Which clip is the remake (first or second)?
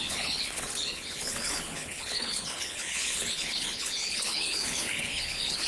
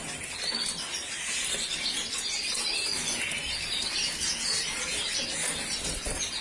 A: first